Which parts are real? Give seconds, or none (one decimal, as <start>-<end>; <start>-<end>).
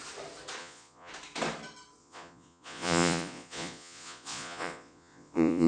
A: 0.0-0.6; 1.1-2.0